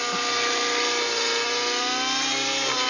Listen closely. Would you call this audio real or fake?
real